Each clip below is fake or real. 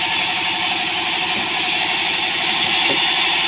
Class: real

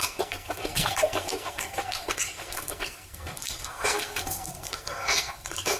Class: fake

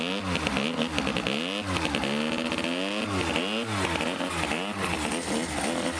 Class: real